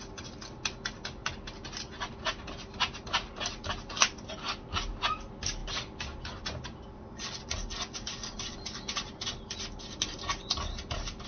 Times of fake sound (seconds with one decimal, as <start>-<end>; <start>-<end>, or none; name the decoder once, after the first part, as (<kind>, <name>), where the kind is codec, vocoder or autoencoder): none